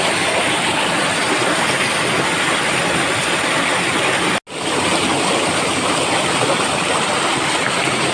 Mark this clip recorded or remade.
recorded